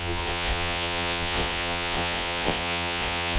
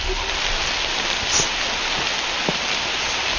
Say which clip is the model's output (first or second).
first